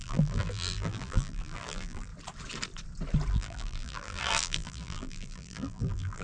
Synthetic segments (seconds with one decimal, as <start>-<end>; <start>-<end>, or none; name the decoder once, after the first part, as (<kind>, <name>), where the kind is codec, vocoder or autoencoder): 0.0-2.1 (vocoder, BigVGAN v2); 3.3-6.2